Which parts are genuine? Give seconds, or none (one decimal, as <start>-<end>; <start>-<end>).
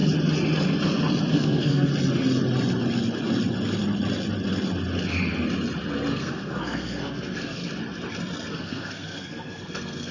0.0-1.3; 1.9-6.1; 7.6-8.5